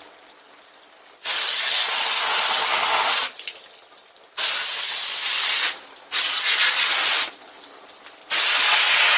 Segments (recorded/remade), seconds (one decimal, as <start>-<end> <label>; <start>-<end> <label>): 0.0-9.2 recorded